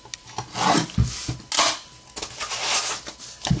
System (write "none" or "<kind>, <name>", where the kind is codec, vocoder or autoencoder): none